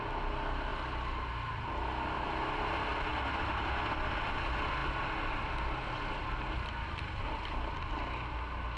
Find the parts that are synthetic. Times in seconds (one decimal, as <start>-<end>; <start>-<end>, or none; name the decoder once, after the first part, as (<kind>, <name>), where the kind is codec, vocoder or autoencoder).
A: none

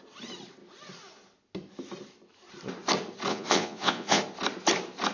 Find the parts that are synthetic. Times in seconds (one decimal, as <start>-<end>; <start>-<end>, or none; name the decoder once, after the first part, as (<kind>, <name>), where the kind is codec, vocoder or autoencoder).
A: 3.3-4.2 (vocoder, Vocos)

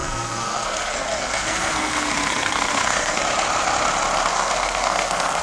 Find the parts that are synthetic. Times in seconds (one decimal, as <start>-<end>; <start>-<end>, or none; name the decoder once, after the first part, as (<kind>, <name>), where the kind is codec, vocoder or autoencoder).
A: 0.0-3.2 (codec, SNAC); 4.3-5.4

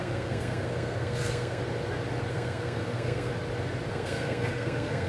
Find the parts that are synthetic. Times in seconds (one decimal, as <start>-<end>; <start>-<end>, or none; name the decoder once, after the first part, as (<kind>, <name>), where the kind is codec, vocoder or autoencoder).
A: 0.0-1.6 (codec, SNAC); 2.3-3.3; 3.9-5.1

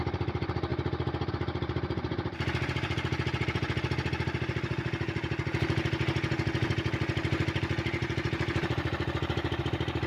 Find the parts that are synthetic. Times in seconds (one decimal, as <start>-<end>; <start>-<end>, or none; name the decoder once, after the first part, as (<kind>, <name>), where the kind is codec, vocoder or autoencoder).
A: 0.0-0.7 (vocoder, BigVGAN v2); 1.3-3.1; 7.6-10.1

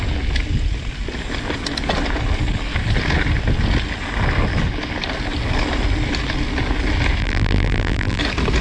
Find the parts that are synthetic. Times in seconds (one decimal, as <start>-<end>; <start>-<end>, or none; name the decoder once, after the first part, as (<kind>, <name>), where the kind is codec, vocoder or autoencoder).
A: 7.2-8.2 (vocoder, BigVGAN v2)

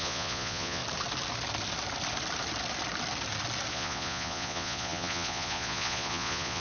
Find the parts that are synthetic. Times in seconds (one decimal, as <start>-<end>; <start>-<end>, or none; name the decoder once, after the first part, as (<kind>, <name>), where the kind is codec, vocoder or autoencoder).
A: 0.0-0.8 (vocoder, Vocos); 3.7-6.6

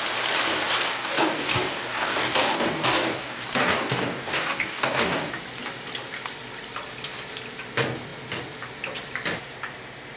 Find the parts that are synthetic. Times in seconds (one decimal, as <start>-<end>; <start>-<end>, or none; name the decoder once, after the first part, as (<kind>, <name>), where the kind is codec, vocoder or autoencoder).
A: 0.9-5.3 (codec, DAC)